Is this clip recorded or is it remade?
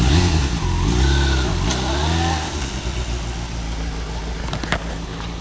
recorded